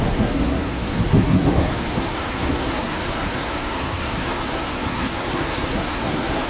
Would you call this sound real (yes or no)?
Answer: no